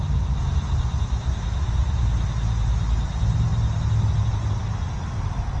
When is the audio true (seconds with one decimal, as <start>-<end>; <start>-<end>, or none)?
0.0-5.6